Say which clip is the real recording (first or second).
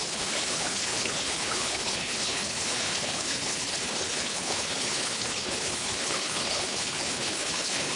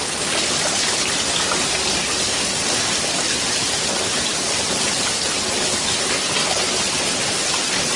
second